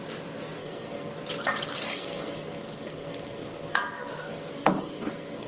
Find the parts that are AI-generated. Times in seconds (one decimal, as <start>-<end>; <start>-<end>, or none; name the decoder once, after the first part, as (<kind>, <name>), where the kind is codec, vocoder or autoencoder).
0.6-1.1 (codec, SNAC); 1.9-5.5